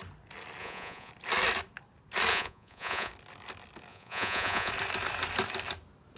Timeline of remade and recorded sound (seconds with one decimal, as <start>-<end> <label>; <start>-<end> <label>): 0.0-0.6 recorded; 0.6-1.1 remade; 1.1-2.3 recorded; 2.3-3.1 remade; 3.1-3.9 recorded; 3.9-4.7 remade; 4.7-6.2 recorded